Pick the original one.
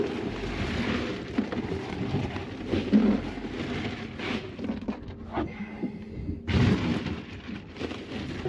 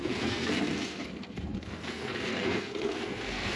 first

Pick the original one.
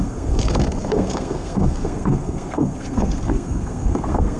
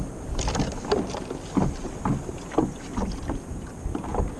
second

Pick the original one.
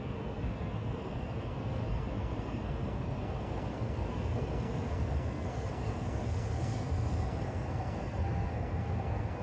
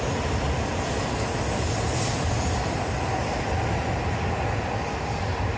second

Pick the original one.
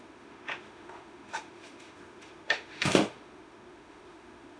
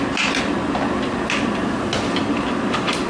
second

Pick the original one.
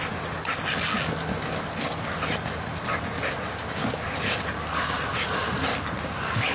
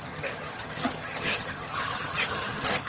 first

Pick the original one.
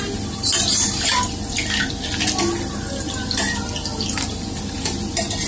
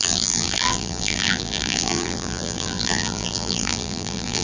first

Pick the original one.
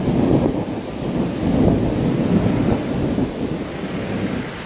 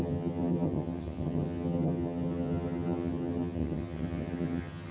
first